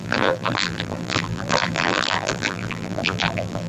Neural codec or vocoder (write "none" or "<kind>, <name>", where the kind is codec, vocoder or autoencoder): vocoder, BigVGAN v2